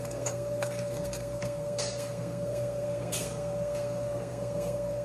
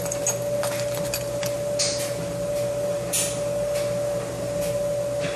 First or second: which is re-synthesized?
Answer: first